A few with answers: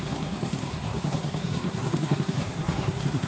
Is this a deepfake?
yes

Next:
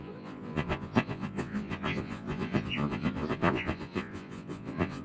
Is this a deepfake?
yes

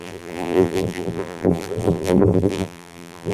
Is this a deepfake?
yes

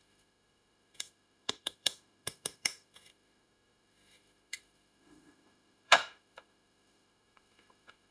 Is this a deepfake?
yes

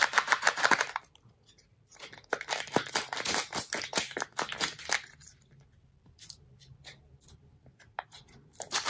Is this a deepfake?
no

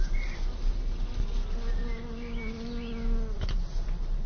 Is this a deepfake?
no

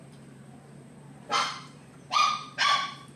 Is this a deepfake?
yes